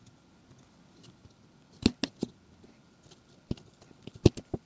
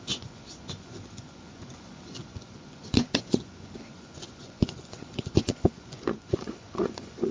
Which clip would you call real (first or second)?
first